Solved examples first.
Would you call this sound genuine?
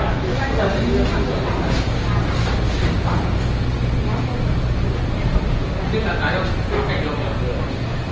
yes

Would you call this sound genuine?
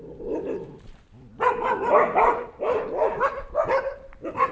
yes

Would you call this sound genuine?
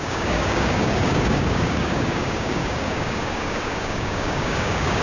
no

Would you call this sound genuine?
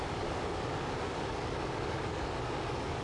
no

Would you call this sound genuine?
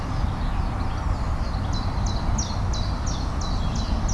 yes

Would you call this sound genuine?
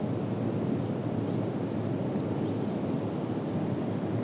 yes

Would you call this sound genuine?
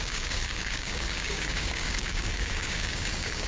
no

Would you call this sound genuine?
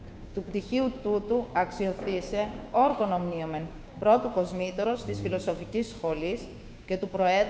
no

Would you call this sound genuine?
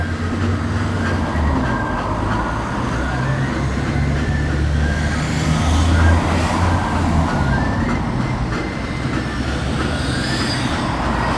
yes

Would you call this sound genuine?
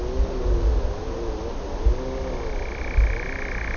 yes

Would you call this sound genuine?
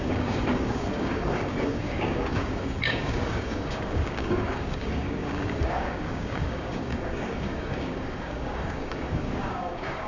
no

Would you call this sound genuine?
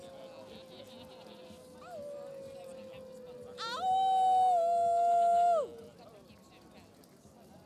yes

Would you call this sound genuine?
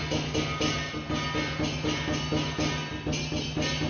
yes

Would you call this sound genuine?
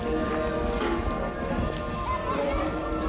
yes